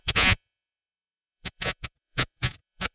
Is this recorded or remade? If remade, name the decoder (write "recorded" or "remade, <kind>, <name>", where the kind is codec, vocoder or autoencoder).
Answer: remade, vocoder, Vocos